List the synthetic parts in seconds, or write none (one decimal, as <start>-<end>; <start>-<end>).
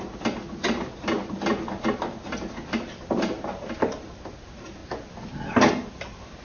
none